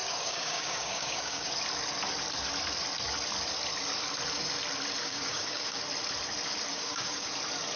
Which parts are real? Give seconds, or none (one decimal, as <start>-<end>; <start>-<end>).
1.5-5.0; 5.8-6.7; 7.3-7.8